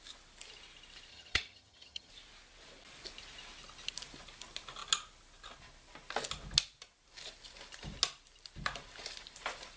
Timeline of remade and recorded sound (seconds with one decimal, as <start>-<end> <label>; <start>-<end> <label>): 0.0-1.1 recorded; 1.1-2.1 remade; 2.1-9.8 recorded